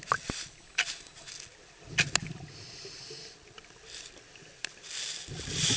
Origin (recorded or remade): recorded